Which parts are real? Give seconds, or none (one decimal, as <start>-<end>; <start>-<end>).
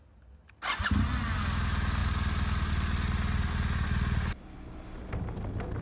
0.0-5.8